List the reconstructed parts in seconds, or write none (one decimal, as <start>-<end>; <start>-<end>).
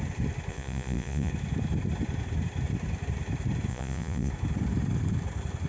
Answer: 0.5-1.3; 3.7-4.3